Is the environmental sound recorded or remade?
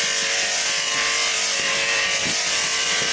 remade